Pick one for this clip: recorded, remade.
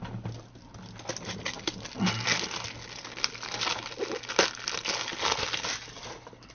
recorded